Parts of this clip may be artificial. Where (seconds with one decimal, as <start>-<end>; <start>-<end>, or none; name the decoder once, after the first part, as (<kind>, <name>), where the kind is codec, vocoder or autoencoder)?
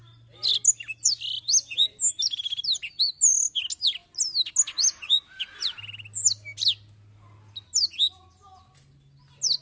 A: none